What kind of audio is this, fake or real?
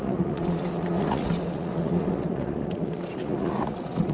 fake